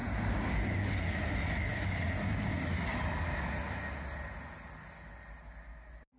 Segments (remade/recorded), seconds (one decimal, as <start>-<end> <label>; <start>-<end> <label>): 0.0-6.2 recorded